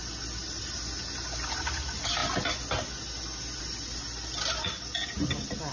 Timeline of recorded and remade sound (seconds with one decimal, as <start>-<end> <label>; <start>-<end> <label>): 0.0-5.7 recorded